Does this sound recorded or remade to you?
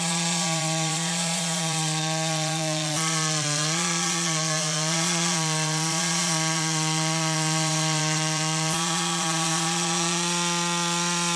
remade